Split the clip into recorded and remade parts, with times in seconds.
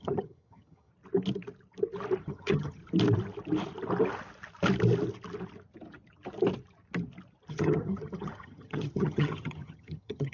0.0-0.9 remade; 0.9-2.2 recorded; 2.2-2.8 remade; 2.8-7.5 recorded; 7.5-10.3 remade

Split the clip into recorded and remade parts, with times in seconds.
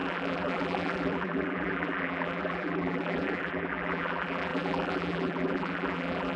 0.0-6.4 remade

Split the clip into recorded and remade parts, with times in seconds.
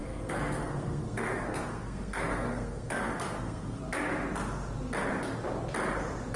0.0-3.8 remade; 3.8-6.4 recorded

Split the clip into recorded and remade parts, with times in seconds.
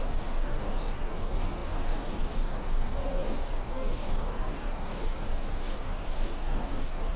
0.0-7.2 remade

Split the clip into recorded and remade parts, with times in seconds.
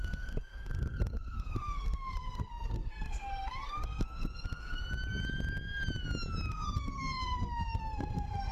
0.0-4.8 remade; 4.8-6.5 recorded; 6.5-8.5 remade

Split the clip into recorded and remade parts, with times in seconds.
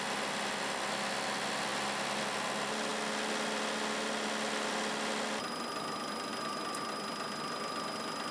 0.0-8.3 recorded